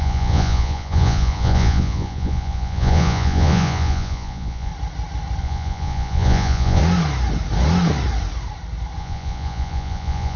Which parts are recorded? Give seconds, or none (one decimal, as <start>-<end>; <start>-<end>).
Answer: 4.7-5.4; 6.8-9.0

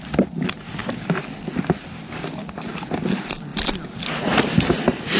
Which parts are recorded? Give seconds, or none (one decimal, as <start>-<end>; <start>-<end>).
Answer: 0.0-5.2

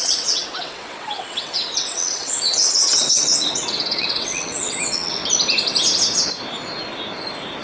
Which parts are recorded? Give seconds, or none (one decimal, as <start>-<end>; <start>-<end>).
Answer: 5.2-7.6

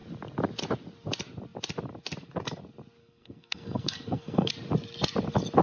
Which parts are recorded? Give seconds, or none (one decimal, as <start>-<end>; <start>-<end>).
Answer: 0.0-3.0; 4.5-5.6

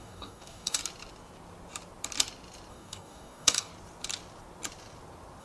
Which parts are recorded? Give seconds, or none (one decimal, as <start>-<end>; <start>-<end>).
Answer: 0.8-2.7; 3.7-5.4

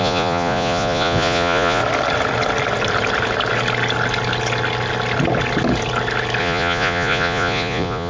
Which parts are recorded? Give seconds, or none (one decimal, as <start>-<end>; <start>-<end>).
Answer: 1.8-6.4

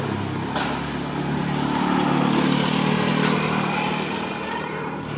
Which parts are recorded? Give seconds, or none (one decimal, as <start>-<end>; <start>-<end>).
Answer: 0.0-5.2